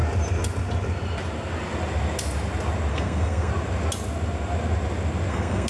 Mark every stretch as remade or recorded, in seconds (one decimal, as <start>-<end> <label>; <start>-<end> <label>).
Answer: 0.0-2.9 recorded; 2.9-3.5 remade; 3.5-5.3 recorded; 5.3-5.7 remade